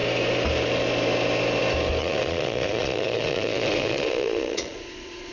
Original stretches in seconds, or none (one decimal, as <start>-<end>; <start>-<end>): 0.0-2.0